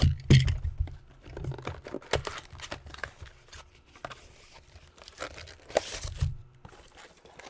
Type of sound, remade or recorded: recorded